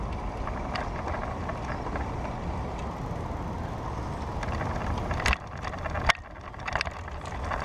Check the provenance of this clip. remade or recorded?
recorded